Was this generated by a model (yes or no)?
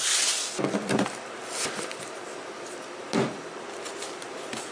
no